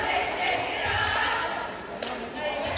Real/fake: real